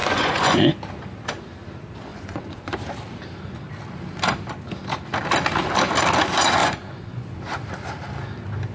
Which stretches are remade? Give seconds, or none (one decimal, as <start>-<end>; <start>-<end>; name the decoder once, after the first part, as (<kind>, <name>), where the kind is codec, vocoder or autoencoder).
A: 0.0-0.8 (vocoder, Vocos); 2.1-2.7; 6.6-7.4

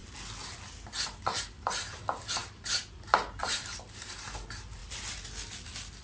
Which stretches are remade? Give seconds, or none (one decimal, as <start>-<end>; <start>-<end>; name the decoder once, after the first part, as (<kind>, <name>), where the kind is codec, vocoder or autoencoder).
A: 1.2-4.8 (vocoder, BigVGAN v2)

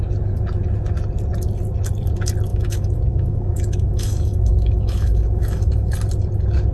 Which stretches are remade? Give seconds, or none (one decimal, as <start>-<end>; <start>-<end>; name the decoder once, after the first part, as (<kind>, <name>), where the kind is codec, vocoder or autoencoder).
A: 2.5-5.9 (autoencoder, DAC-VAE)

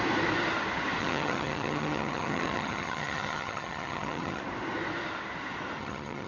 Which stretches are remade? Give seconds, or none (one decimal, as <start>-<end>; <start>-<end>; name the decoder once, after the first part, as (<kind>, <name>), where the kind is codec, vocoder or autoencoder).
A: 1.0-4.4 (vocoder, HiFi-GAN); 5.8-6.3

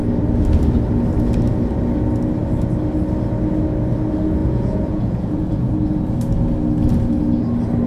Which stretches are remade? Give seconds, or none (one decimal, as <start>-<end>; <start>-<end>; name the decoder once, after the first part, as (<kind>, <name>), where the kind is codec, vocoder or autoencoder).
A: 4.4-5.7 (vocoder, Vocos)

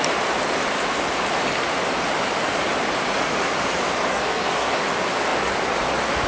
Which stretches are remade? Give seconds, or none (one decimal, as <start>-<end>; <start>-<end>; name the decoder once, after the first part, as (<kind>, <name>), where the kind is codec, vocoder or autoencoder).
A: 4.1-4.8 (codec, SNAC)

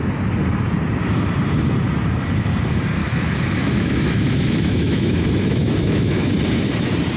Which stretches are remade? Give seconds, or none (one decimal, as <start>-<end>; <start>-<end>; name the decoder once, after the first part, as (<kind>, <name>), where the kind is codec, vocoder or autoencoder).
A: 3.0-6.3 (autoencoder, DAC-VAE)

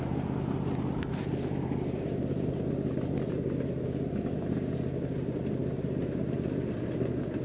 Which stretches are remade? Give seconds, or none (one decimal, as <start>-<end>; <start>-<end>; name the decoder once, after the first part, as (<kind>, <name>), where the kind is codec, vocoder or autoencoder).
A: none